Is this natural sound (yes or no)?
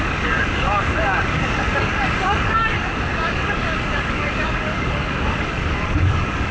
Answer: no